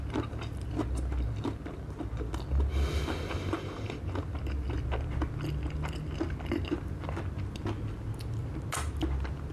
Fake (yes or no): no